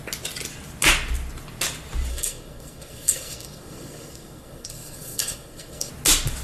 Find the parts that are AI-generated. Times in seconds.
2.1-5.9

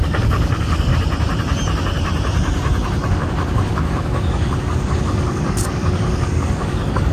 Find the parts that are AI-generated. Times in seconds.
0.0-0.9; 3.1-7.1

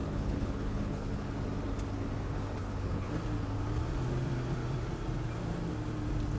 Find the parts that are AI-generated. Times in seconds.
0.0-1.3; 2.6-3.1

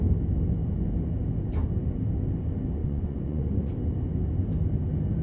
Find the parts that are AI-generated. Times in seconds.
2.8-3.7

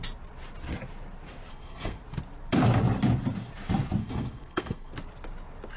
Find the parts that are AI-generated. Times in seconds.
1.5-2.0; 4.0-4.9

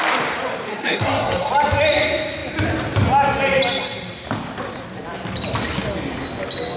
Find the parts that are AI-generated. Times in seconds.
0.7-1.5